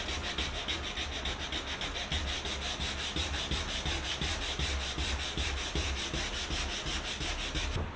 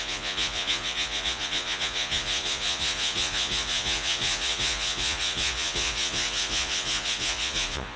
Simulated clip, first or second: second